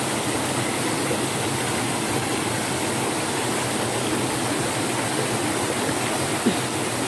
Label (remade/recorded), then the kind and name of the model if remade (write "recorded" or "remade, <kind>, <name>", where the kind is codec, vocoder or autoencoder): recorded